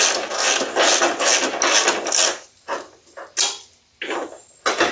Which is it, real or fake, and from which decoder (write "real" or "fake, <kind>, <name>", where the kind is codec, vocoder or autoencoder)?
real